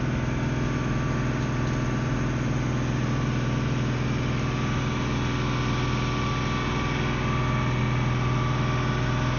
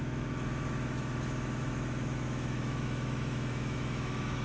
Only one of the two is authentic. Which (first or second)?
first